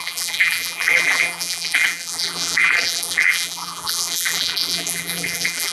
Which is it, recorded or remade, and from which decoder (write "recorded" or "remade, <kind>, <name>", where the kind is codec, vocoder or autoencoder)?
remade, vocoder, BigVGAN v2